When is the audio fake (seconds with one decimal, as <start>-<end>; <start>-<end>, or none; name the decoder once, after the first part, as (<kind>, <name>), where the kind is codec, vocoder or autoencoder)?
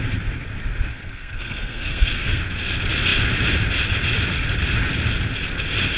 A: 0.9-2.4 (codec, SNAC)